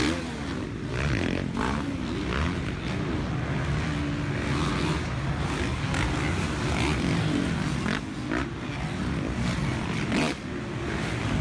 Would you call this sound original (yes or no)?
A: yes